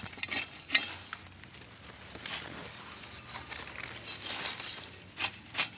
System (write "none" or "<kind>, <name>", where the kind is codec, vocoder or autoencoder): none